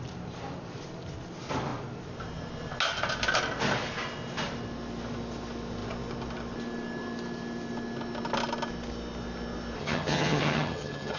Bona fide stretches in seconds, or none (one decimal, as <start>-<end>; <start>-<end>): 0.0-9.8